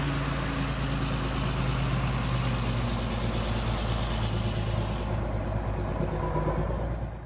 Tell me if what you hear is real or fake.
real